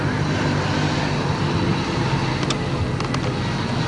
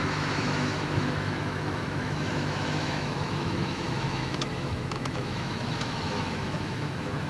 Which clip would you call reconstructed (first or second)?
second